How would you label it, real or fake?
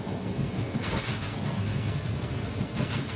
fake